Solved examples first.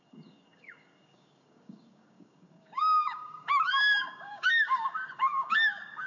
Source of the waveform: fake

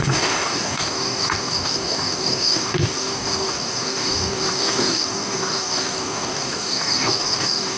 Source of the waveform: fake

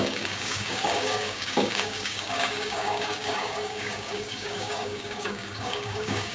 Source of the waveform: fake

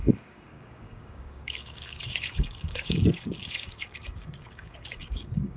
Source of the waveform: fake